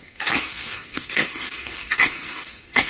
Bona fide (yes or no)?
no